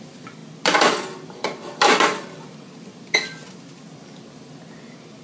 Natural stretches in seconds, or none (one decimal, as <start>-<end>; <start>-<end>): 0.0-5.2